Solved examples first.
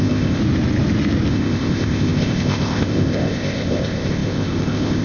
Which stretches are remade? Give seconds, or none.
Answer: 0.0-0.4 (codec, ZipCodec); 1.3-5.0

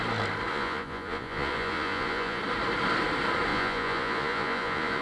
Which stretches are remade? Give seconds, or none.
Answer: 0.5-2.4 (vocoder, Vocos); 3.5-5.0

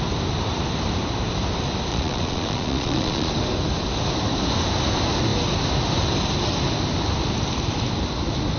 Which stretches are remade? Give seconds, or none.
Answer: 1.9-3.3 (vocoder, Vocos)

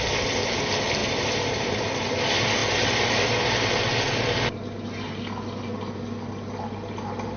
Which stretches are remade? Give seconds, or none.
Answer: 1.0-1.8 (vocoder, BigVGAN v2)

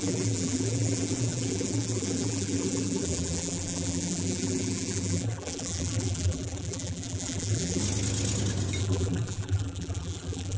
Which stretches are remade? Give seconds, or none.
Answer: 0.0-7.8 (vocoder, BigVGAN v2); 8.8-10.6

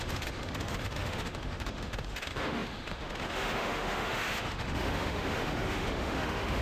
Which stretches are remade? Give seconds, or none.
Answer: 0.0-6.6 (autoencoder, DAC-VAE)

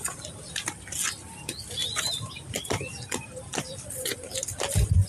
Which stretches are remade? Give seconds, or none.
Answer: none